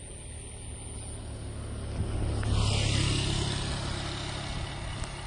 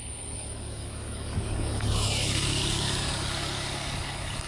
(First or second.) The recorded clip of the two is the first